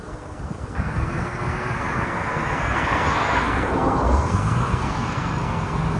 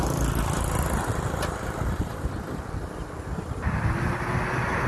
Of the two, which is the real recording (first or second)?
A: second